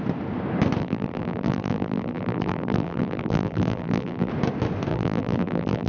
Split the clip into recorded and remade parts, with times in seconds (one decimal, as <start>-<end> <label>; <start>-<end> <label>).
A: 0.0-0.8 recorded; 0.8-4.3 remade; 4.3-4.9 recorded; 4.9-5.9 remade